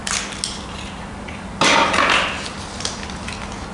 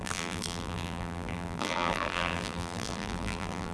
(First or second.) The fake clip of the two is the second